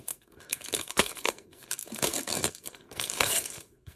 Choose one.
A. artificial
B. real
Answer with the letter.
A